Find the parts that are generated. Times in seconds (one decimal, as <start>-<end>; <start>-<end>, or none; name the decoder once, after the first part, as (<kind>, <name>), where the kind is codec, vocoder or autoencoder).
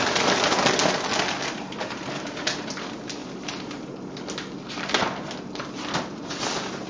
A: 3.2-4.2 (vocoder, BigVGAN v2)